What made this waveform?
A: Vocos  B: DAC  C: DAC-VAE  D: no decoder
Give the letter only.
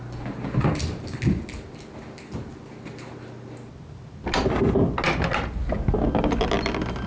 D